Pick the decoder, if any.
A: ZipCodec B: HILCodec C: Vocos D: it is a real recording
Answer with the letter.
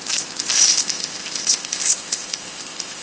A